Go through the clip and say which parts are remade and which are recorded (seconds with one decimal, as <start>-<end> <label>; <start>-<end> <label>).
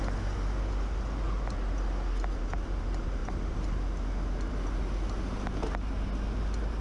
0.0-6.8 recorded